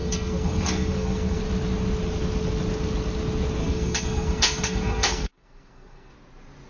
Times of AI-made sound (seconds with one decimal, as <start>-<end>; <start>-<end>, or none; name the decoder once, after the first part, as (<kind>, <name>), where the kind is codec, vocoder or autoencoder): 0.0-1.4 (codec, SNAC); 3.6-6.1